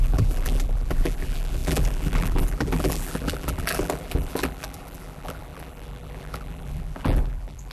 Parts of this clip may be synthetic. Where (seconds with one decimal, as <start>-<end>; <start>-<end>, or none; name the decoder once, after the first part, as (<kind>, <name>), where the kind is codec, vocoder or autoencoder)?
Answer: 0.0-7.7 (vocoder, BigVGAN v2)